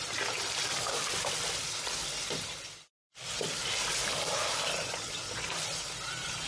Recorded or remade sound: recorded